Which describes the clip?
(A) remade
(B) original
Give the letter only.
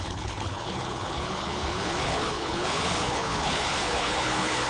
A